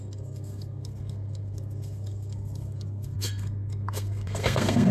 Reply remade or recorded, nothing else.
remade